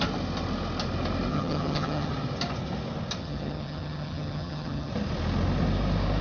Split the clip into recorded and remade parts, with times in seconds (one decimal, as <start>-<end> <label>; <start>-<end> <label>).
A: 0.0-1.3 recorded; 1.3-2.1 remade; 2.1-3.2 recorded; 3.2-4.9 remade; 4.9-6.2 recorded